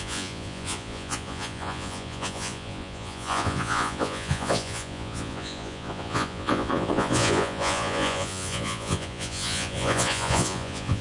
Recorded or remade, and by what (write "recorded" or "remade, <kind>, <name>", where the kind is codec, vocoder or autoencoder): remade, vocoder, Vocos